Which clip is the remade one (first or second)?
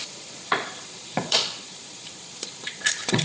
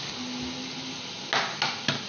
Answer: first